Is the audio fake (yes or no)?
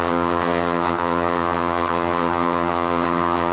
yes